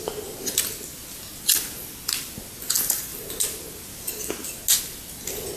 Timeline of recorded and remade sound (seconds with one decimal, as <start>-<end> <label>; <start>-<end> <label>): 0.0-5.6 recorded